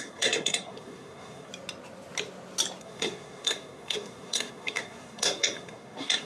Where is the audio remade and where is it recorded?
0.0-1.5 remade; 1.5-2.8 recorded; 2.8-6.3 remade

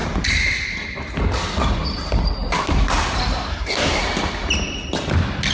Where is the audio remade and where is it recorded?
0.0-3.5 recorded; 3.5-4.0 remade; 4.0-5.5 recorded

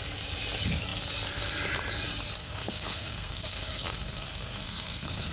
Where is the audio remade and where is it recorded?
0.0-2.4 recorded; 2.4-5.3 remade

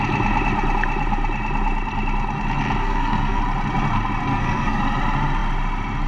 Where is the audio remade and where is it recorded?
0.0-2.8 recorded; 2.8-3.4 remade; 3.4-4.3 recorded; 4.3-4.8 remade; 4.8-6.1 recorded

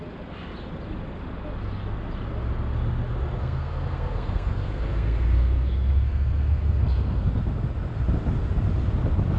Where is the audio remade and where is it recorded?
0.0-3.4 recorded; 3.4-7.3 remade; 7.3-9.4 recorded

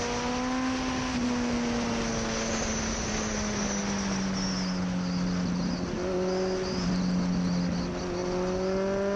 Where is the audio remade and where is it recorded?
0.0-9.2 recorded

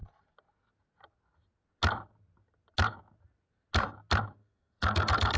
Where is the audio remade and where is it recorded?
0.0-4.4 recorded; 4.4-5.4 remade

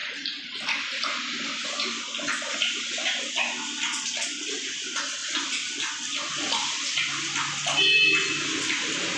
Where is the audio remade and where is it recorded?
0.0-9.2 recorded